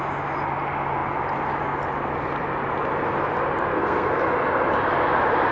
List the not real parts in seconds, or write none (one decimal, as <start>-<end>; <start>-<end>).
3.7-4.2